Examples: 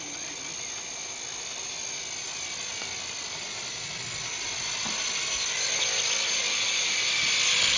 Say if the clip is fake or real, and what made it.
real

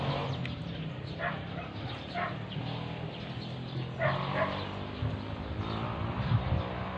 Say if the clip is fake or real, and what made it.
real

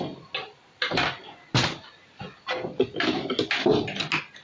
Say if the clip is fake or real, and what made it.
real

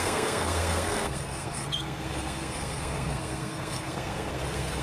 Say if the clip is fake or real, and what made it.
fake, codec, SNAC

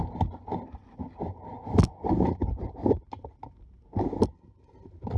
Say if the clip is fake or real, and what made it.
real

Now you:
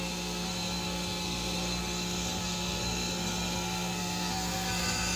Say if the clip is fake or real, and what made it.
fake, codec, SNAC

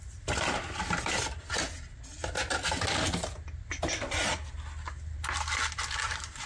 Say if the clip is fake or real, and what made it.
real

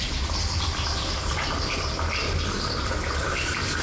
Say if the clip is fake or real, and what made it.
real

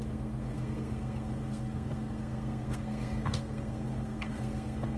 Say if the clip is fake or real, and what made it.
fake, codec, SNAC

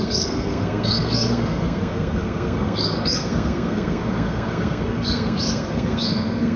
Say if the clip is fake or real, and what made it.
fake, codec, SNAC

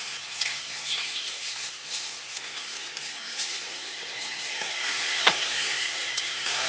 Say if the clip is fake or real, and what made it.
fake, codec, SNAC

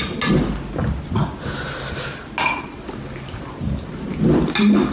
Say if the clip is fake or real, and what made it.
real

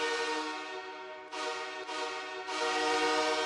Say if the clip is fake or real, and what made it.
real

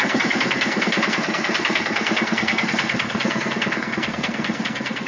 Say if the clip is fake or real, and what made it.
fake, codec, SNAC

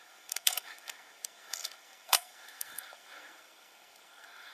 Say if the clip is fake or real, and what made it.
fake, codec, SNAC